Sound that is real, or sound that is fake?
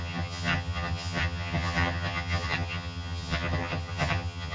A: fake